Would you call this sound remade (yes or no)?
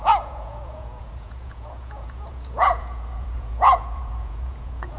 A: yes